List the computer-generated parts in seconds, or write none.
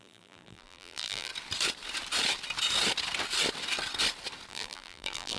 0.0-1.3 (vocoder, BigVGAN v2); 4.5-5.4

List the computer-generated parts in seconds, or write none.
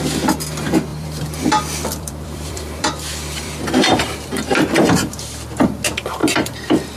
0.9-5.1 (vocoder, BigVGAN v2); 6.2-7.0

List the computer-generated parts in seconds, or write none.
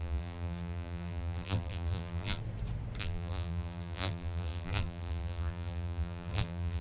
0.0-2.4 (vocoder, BigVGAN v2); 3.0-6.8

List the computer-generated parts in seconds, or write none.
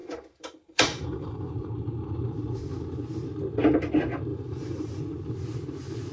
0.0-2.1 (vocoder, BigVGAN v2); 4.3-5.0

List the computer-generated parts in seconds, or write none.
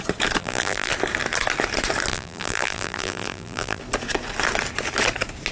0.4-0.9 (vocoder, BigVGAN v2); 2.1-3.8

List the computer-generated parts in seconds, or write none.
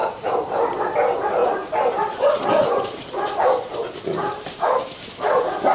0.0-0.8 (vocoder, BigVGAN v2); 1.4-4.8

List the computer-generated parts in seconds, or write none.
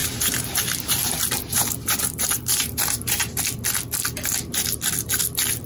0.0-3.4 (vocoder, BigVGAN v2)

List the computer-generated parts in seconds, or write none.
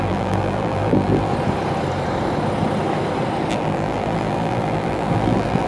0.0-1.3 (vocoder, BigVGAN v2); 3.5-5.7